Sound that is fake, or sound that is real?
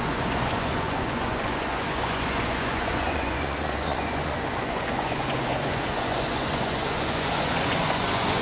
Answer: fake